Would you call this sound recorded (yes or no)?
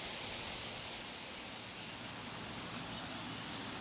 yes